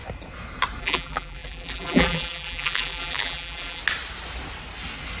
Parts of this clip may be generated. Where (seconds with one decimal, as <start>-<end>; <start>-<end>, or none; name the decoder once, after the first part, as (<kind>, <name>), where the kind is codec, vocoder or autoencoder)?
0.8-3.8 (vocoder, BigVGAN v2)